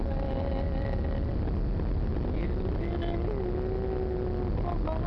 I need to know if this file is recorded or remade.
recorded